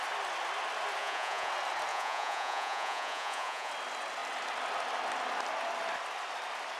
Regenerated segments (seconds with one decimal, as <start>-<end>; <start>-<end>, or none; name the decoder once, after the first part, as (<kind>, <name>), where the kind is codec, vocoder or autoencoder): 1.0-1.5 (vocoder, Vocos); 1.9-3.7